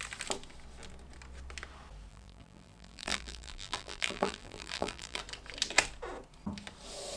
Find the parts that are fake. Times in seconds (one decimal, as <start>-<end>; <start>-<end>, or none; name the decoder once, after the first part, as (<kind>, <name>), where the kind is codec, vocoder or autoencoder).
2.1-5.2 (vocoder, BigVGAN v2)